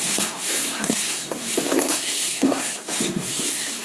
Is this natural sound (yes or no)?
no